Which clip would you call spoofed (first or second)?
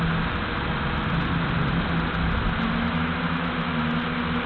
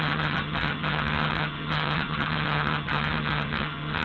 second